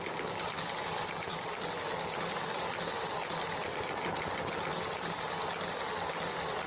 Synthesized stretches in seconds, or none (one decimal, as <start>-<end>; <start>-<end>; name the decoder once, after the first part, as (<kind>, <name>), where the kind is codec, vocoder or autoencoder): none